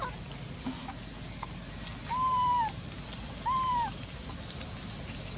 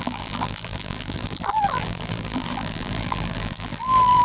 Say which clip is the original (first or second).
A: first